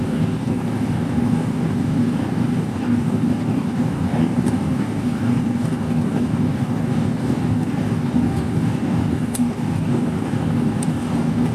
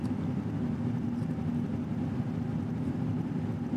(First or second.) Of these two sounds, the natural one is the second